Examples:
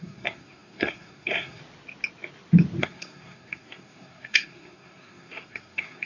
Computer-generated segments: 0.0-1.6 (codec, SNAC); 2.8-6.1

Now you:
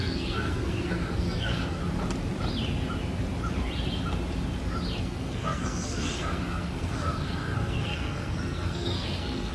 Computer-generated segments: 0.0-1.8 (codec, SNAC); 5.0-9.5

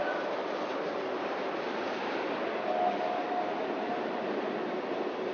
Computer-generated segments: none

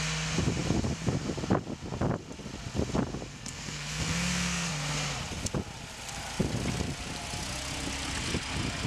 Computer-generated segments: 3.3-4.7 (codec, SNAC)

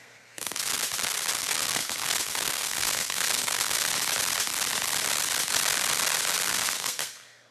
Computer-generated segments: 0.0-0.7 (codec, SNAC); 1.4-3.9; 6.5-7.5